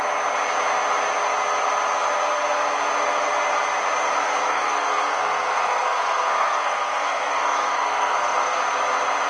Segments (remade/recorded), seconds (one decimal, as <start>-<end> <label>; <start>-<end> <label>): 0.0-4.5 recorded; 4.5-8.6 remade; 8.6-9.3 recorded